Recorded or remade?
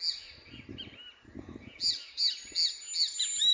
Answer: recorded